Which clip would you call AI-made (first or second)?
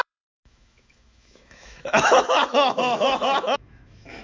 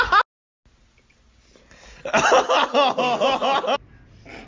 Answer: first